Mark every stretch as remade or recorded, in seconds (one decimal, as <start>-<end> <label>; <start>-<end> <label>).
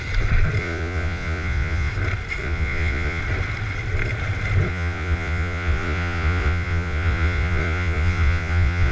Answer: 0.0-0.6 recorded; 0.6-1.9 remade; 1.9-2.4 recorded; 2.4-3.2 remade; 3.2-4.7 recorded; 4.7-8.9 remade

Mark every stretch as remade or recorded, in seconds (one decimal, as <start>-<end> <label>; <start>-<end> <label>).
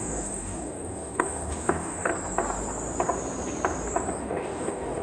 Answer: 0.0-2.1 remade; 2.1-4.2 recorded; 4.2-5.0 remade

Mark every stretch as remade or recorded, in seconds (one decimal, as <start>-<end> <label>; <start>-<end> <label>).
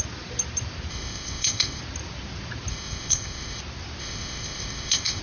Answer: 0.0-0.9 recorded; 0.9-1.8 remade; 1.8-2.7 recorded; 2.7-3.6 remade; 3.6-4.0 recorded; 4.0-5.2 remade